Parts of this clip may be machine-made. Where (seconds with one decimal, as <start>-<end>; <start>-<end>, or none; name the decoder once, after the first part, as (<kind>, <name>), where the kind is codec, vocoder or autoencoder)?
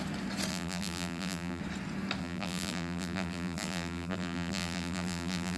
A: 0.5-1.6 (vocoder, BigVGAN v2); 2.2-5.6